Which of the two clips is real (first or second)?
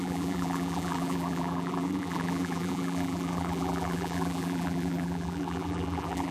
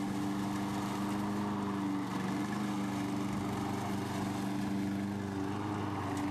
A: second